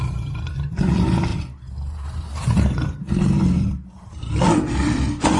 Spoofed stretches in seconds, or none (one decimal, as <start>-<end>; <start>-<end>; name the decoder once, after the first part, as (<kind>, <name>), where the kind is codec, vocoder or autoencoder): none